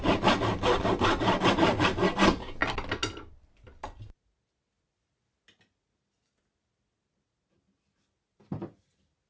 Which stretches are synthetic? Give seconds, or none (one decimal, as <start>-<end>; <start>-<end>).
none